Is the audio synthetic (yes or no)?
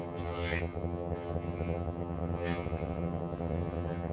yes